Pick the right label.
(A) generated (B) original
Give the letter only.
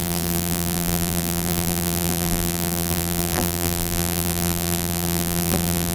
A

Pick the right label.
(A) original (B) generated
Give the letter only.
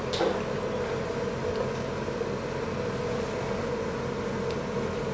A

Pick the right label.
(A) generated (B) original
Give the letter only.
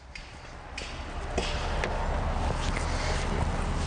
B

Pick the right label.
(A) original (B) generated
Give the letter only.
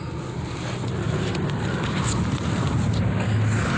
A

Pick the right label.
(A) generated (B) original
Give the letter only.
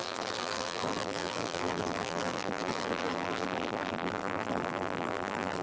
A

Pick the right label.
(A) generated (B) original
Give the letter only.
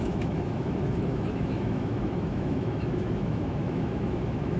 A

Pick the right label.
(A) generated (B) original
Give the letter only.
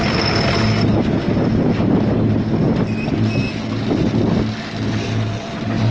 B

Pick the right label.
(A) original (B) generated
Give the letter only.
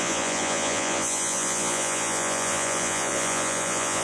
B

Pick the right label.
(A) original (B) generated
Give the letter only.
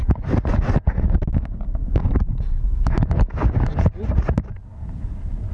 A